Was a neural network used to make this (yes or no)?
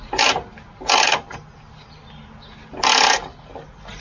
no